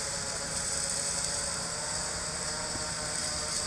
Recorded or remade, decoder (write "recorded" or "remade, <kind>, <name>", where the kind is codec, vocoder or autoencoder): remade, vocoder, BigVGAN v2